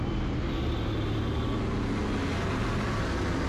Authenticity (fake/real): real